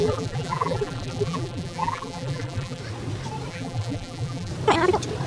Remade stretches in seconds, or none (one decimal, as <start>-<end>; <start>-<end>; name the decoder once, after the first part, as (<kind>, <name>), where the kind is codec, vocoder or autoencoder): 0.0-2.8 (vocoder, BigVGAN v2); 3.5-4.5

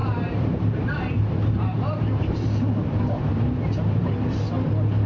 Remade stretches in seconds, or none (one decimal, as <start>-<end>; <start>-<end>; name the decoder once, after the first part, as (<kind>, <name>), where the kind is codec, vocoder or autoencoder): 0.0-2.2 (vocoder, BigVGAN v2)

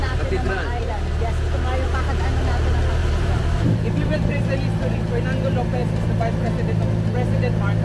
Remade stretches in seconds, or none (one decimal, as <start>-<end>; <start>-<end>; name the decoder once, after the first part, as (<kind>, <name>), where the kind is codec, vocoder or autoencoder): 0.0-0.8 (vocoder, BigVGAN v2); 3.0-4.4

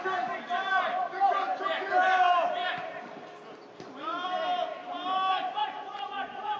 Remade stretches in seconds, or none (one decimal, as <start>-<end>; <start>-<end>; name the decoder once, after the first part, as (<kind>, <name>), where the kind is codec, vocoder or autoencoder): 5.6-6.6 (vocoder, Vocos)

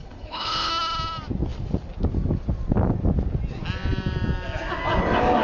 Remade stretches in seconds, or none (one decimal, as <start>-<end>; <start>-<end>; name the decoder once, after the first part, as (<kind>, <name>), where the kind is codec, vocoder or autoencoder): 0.0-0.7 (codec, HILCodec)